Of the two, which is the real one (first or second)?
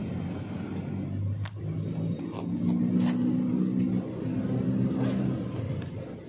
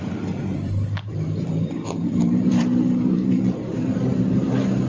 first